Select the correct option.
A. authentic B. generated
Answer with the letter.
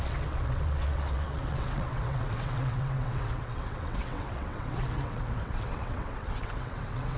B